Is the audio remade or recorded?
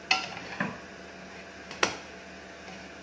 recorded